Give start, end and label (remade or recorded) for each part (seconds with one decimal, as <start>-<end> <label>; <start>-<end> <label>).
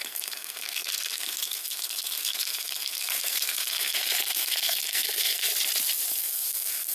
0.0-5.5 remade; 5.5-6.1 recorded; 6.1-6.9 remade